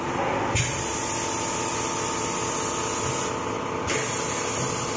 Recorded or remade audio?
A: recorded